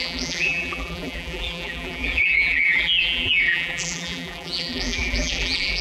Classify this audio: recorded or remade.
remade